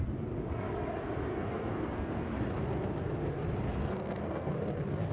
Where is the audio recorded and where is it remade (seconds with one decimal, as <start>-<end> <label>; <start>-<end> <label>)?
0.0-1.3 recorded; 1.3-2.1 remade; 2.1-3.8 recorded; 3.8-4.5 remade; 4.5-5.1 recorded

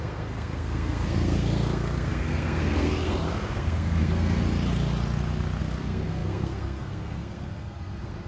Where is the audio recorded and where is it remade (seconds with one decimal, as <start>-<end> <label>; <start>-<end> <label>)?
0.0-4.4 remade; 4.4-5.6 recorded; 5.6-8.3 remade

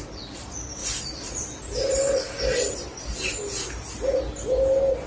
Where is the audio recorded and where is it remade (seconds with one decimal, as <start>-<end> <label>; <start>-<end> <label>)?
0.0-5.1 recorded

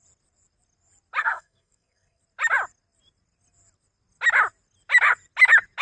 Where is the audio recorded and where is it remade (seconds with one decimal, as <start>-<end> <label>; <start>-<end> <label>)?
0.0-1.2 recorded; 1.2-2.2 remade; 2.2-5.8 recorded

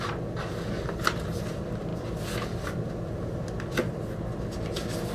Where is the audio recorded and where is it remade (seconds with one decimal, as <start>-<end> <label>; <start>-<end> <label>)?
0.0-5.1 recorded

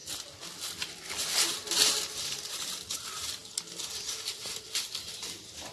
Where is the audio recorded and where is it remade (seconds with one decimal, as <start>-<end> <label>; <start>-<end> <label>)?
0.0-5.7 recorded

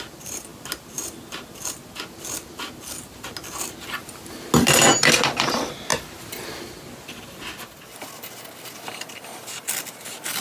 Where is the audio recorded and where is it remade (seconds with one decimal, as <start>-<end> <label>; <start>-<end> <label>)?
0.0-10.4 recorded